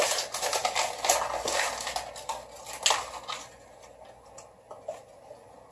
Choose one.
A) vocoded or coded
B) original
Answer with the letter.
B